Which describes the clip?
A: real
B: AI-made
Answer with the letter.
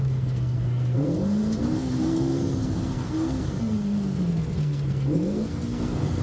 B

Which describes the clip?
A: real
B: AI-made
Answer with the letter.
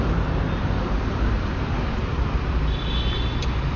A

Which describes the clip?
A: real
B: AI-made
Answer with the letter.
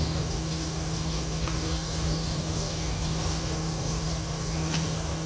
B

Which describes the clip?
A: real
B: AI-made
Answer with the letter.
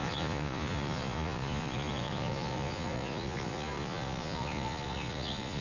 B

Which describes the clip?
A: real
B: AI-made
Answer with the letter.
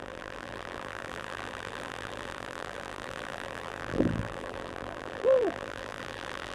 B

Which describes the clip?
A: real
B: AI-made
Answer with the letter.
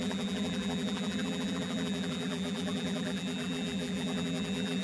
B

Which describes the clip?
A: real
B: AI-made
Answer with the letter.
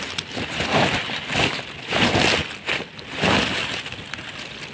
A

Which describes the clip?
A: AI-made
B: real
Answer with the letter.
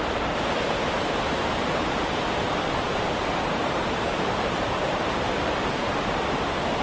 A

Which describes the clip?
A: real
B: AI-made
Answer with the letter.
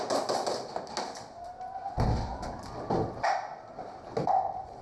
A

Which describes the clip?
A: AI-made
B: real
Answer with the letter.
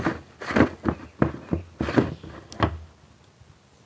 B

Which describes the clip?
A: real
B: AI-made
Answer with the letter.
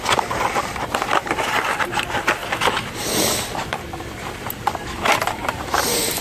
B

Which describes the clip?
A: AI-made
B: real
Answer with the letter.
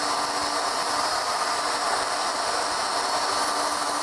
B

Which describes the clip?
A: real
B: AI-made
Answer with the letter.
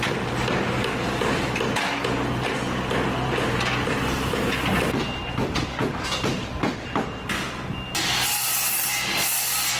A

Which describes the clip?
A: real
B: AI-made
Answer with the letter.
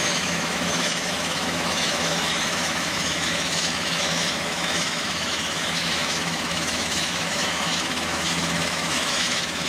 B